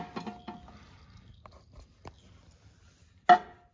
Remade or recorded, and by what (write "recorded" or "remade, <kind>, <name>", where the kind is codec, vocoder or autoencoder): recorded